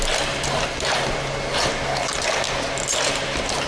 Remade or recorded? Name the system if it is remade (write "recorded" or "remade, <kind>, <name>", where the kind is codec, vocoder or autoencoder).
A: recorded